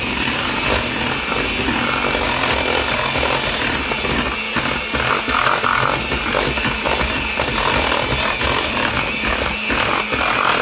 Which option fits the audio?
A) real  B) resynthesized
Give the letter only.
A